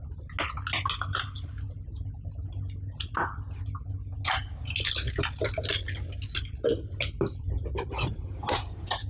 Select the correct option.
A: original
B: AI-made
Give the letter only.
A